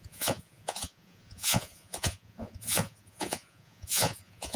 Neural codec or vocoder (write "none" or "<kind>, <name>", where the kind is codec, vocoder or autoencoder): vocoder, Vocos